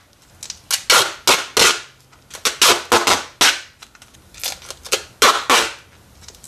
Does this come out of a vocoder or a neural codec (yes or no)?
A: no